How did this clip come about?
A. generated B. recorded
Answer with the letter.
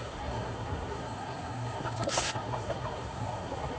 A